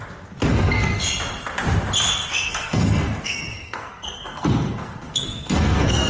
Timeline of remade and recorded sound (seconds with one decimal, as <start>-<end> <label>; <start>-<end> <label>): 0.0-0.5 recorded; 0.5-1.0 remade; 1.0-2.3 recorded; 2.3-6.1 remade